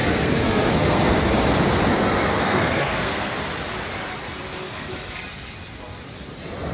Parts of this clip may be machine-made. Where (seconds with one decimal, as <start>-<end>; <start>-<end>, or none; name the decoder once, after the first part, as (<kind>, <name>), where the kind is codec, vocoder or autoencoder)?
0.0-1.3 (codec, SNAC); 1.9-3.3; 4.6-5.1